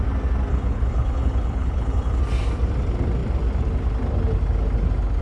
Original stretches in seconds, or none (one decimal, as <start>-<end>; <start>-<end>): 0.0-0.5; 2.2-5.2